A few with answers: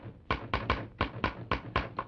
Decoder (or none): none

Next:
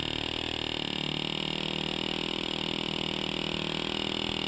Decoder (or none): none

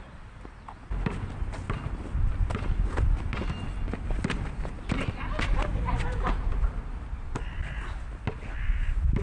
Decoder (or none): none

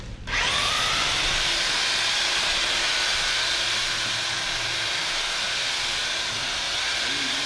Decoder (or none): none